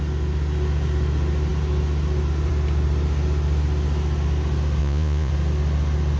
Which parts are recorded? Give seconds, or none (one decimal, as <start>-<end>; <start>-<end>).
0.0-4.8; 5.3-6.2